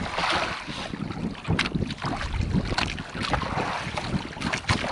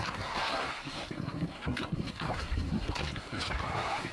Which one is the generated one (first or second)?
second